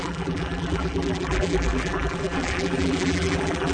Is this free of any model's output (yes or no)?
no